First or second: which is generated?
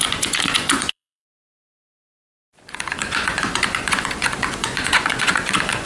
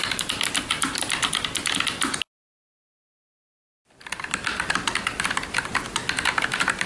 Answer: first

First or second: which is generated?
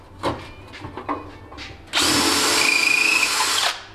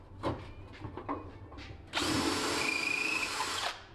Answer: second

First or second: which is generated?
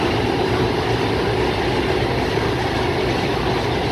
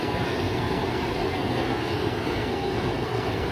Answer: second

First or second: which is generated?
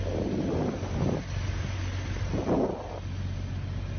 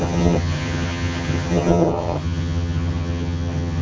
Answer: second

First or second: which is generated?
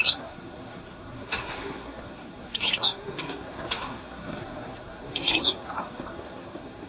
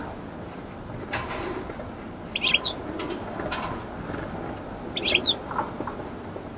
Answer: first